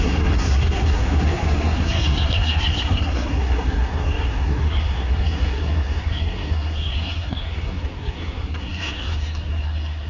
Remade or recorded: remade